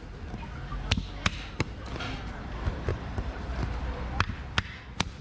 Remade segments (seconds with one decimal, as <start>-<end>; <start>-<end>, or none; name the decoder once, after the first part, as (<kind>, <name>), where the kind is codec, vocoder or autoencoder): 2.9-3.8 (vocoder, BigVGAN v2)